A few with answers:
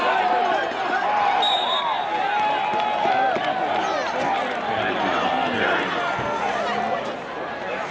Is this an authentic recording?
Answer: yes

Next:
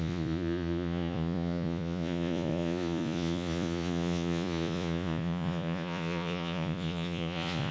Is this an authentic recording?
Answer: no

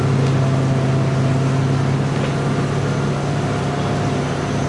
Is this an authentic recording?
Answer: yes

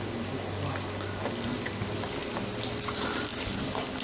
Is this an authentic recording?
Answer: yes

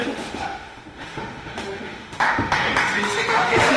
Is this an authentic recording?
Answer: no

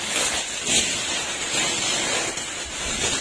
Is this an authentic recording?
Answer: yes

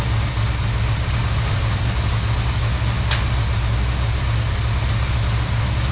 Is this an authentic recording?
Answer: yes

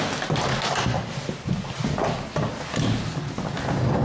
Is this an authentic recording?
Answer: yes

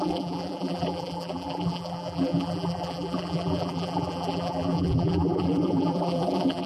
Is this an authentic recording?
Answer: no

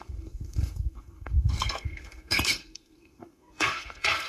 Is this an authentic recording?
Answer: no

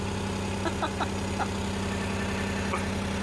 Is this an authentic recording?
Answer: yes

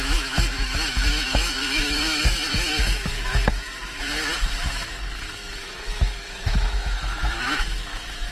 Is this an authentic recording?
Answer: no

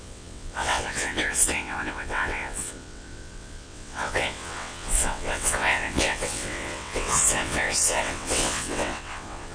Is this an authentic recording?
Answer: no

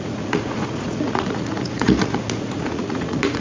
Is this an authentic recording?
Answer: no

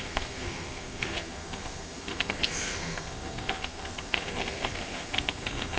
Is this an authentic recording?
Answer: no